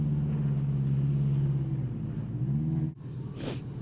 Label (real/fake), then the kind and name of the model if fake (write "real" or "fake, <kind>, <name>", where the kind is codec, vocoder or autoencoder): real